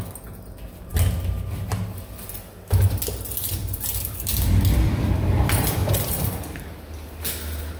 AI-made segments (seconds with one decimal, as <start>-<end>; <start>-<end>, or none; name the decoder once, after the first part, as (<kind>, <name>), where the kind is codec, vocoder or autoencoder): 3.6-4.9 (vocoder, BigVGAN v2); 5.8-6.8